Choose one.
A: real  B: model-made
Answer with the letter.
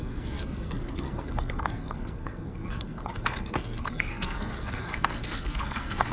B